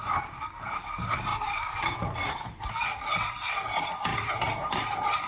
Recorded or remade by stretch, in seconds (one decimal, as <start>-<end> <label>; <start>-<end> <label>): 0.0-1.3 recorded; 1.3-2.7 remade; 2.7-3.1 recorded; 3.1-3.6 remade; 3.6-4.1 recorded; 4.1-4.7 remade; 4.7-5.3 recorded